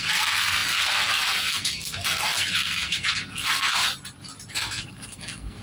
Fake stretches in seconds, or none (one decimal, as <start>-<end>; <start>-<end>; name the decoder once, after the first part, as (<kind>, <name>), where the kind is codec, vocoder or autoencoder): 0.0-3.9 (codec, SNAC); 4.5-5.6